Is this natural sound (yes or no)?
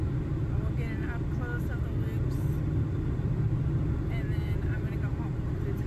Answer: yes